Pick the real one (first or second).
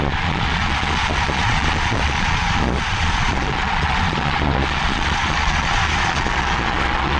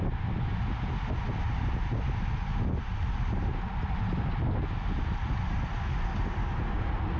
second